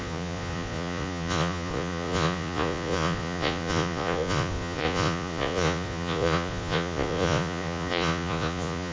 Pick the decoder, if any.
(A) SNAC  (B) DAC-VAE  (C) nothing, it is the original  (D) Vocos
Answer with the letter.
D